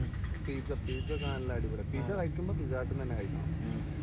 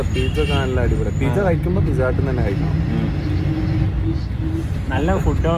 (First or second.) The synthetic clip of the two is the first